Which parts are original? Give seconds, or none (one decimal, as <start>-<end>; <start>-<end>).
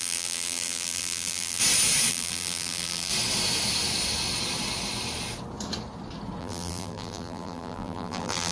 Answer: 1.6-2.1; 3.1-6.4